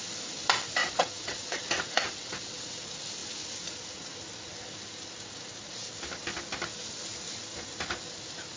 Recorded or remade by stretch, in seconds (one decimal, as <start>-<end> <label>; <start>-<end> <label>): 0.0-0.8 recorded; 0.8-2.8 remade; 2.8-8.6 recorded